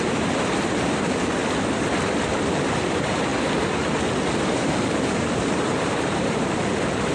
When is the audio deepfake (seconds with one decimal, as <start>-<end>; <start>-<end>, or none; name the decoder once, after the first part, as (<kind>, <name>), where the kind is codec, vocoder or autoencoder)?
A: 0.0-1.4 (vocoder, BigVGAN v2); 2.2-3.3; 4.6-7.1